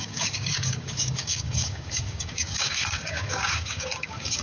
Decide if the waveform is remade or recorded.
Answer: remade